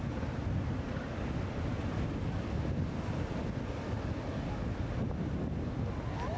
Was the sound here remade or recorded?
recorded